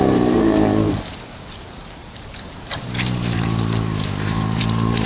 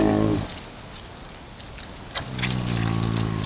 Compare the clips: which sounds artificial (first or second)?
first